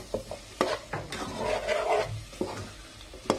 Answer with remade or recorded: recorded